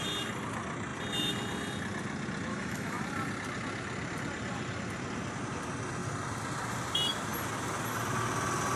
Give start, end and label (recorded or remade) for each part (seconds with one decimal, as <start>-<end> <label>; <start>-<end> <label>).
0.0-2.5 recorded; 2.5-3.0 remade; 3.0-8.8 recorded